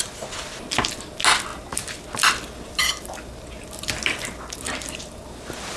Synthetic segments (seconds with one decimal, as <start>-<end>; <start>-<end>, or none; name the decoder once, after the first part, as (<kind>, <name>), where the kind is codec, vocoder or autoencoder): none